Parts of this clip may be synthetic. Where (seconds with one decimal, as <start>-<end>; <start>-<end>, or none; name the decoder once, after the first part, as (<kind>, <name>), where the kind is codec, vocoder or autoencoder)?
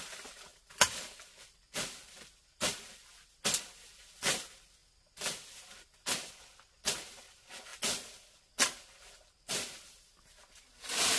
none